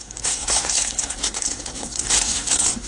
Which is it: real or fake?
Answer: fake